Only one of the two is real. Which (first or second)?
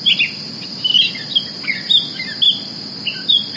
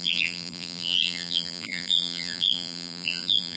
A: first